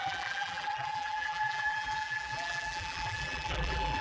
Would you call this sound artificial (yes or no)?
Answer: yes